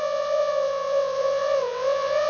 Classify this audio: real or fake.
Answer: fake